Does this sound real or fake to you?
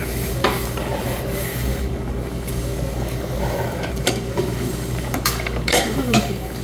fake